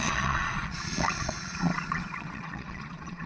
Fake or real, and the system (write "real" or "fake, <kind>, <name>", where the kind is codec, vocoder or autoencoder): fake, vocoder, Vocos